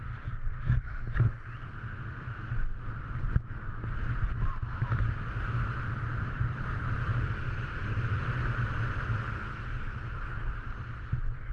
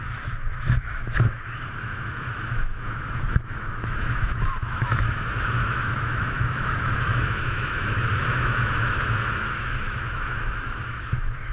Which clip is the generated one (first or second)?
second